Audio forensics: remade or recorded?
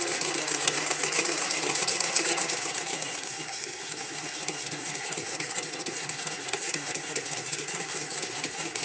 remade